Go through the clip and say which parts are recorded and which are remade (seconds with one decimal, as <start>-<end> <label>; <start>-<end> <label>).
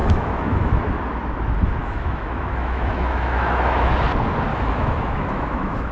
0.0-0.8 remade; 0.8-1.8 recorded; 1.8-3.9 remade; 3.9-4.5 recorded; 4.5-5.9 remade